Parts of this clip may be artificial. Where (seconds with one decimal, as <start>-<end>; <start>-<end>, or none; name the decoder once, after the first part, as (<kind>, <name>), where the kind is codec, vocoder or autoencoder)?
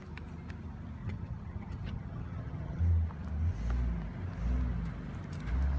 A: 1.0-2.8 (vocoder, HiFi-GAN)